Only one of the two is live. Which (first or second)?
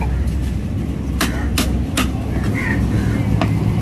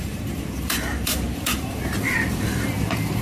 first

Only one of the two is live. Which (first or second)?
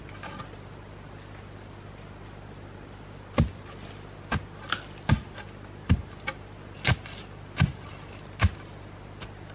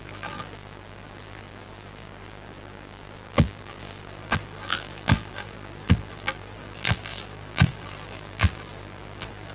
first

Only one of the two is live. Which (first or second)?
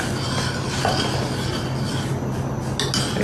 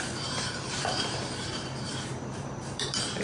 first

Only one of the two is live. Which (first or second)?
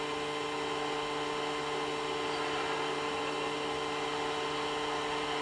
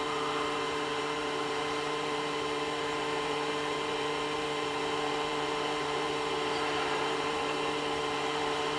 first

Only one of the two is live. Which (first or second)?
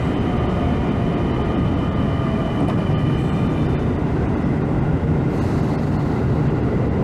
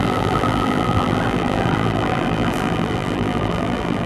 first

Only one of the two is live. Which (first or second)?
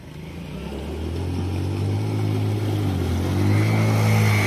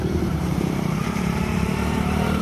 first